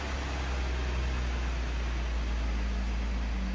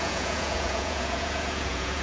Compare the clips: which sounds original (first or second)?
first